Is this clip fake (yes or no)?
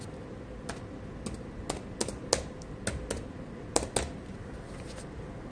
no